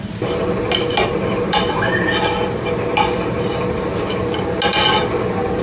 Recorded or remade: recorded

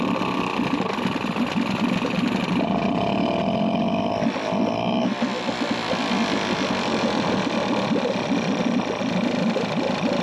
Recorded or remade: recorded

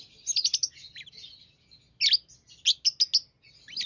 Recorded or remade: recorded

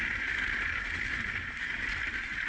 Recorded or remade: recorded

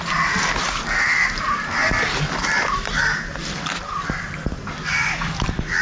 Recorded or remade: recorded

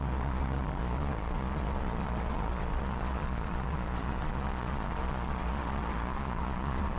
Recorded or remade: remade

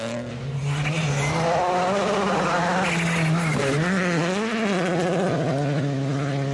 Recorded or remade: recorded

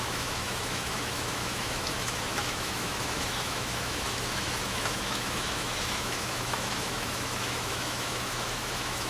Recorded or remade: remade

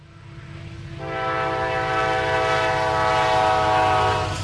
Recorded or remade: recorded